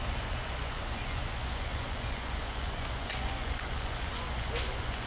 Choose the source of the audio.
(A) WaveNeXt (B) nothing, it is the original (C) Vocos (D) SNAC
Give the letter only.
C